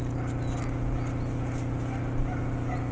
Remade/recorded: recorded